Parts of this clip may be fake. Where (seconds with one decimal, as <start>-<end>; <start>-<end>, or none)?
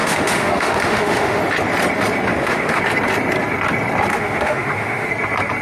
0.0-1.4; 2.3-2.8; 4.1-5.1